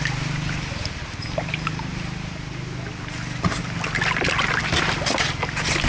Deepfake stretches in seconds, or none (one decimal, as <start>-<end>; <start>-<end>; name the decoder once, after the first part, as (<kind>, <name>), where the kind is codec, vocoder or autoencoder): none